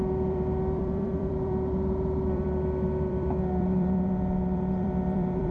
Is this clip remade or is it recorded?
remade